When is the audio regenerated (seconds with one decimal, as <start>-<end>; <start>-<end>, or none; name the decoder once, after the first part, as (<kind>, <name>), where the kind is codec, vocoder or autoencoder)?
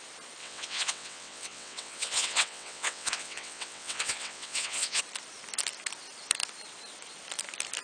0.4-5.0 (vocoder, WaveNeXt)